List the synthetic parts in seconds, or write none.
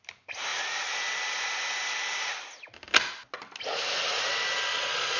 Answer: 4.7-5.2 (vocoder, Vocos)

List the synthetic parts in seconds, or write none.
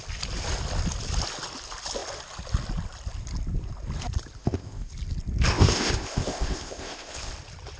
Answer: 4.4-4.9 (codec, ZipCodec); 5.5-7.3